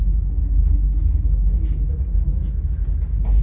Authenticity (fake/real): real